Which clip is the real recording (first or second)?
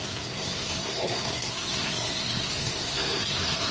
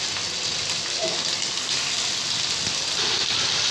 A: second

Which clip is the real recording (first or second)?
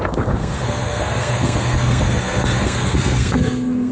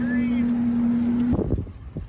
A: second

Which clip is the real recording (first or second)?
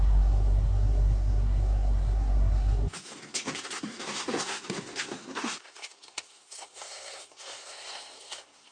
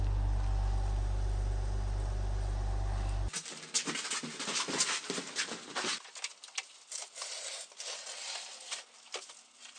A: second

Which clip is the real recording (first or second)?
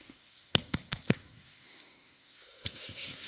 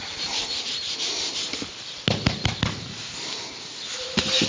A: second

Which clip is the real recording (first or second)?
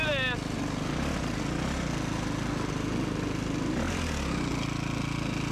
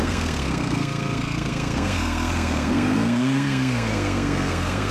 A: first